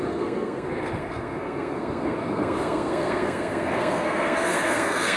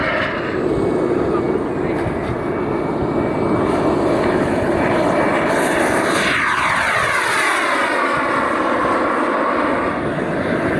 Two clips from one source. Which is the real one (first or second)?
second